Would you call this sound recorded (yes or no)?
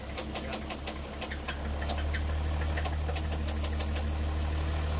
yes